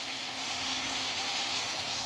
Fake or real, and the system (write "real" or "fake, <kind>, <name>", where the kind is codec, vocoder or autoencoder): fake, autoencoder, DAC-VAE